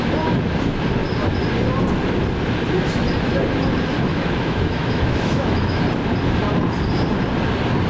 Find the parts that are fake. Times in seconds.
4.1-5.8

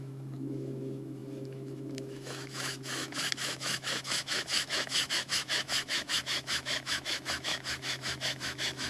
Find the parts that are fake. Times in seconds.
0.0-8.9

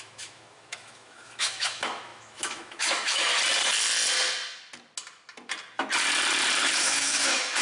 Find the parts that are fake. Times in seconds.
0.0-3.3; 6.6-7.6

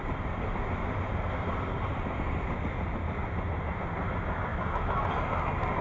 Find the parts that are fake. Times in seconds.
4.5-5.1

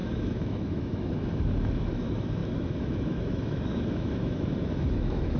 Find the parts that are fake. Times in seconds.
0.0-5.4

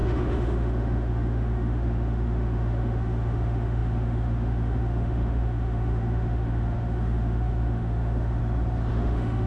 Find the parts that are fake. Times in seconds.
0.0-8.4; 8.9-9.5